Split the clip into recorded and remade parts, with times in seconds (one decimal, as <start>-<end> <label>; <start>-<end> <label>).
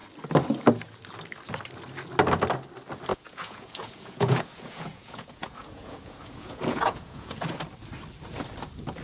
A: 0.0-3.1 recorded; 3.1-7.4 remade; 7.4-9.0 recorded